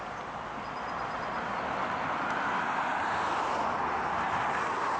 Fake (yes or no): no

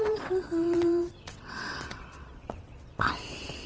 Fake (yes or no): yes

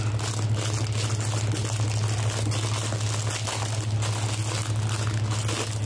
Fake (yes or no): no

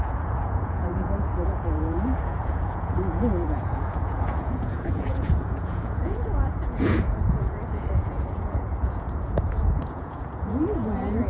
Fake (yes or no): yes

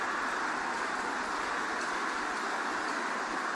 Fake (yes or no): no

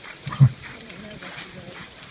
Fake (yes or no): yes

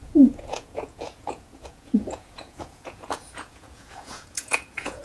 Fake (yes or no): yes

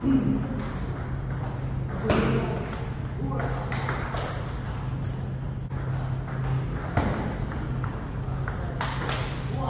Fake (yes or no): no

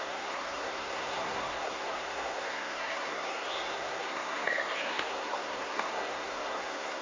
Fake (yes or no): yes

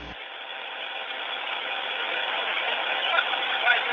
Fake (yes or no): no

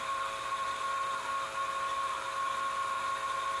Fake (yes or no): no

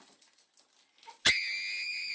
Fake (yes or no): no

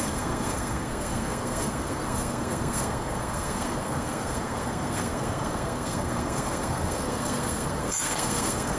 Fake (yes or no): yes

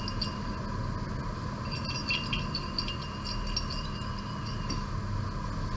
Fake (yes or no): no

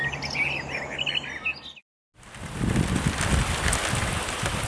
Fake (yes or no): no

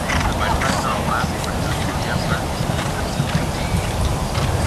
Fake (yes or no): yes